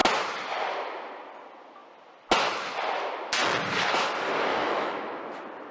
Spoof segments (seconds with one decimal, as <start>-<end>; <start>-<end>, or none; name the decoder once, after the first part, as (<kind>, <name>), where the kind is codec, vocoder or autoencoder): 4.5-5.2 (autoencoder, DAC-VAE)